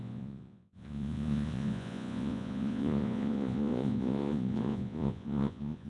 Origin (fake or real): fake